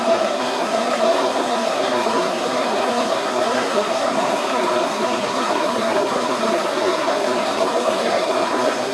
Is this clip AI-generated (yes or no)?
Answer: yes